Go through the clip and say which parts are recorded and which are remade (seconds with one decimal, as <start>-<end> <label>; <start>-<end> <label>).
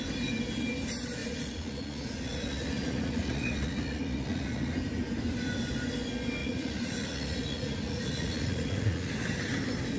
0.0-1.2 recorded; 1.2-4.7 remade; 4.7-6.4 recorded; 6.4-9.1 remade; 9.1-10.0 recorded